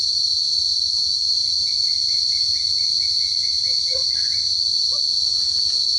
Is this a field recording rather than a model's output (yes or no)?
yes